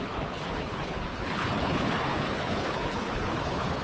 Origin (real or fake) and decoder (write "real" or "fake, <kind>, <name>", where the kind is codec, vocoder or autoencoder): fake, codec, HILCodec